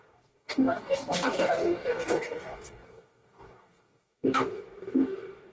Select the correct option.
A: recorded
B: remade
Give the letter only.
B